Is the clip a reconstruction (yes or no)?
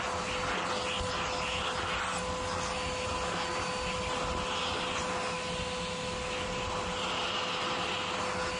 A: no